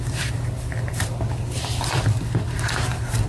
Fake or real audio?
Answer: fake